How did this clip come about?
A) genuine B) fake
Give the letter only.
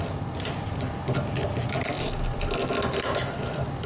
A